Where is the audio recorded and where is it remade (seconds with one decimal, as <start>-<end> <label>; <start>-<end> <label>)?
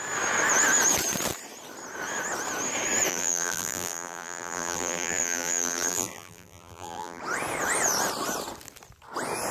0.0-3.1 recorded; 3.1-7.2 remade; 7.2-9.5 recorded